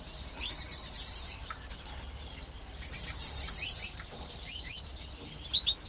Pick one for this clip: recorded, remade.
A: remade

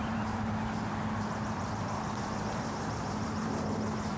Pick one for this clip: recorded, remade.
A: remade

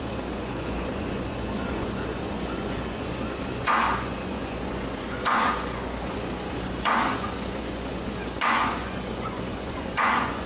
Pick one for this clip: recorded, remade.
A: remade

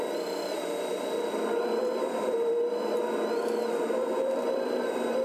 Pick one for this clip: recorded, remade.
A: remade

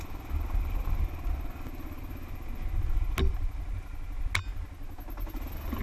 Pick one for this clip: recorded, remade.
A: recorded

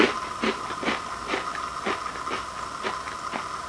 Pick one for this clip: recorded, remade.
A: recorded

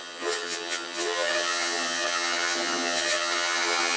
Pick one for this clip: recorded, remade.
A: remade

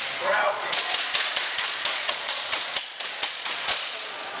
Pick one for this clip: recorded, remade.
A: remade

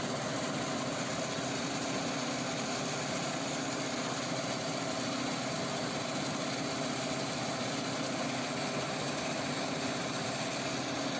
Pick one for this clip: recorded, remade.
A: recorded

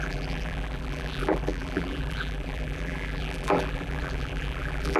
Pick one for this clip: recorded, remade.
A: remade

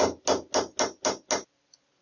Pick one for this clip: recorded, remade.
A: recorded